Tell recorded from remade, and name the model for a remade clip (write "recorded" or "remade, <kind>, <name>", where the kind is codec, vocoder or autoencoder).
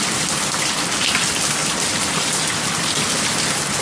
recorded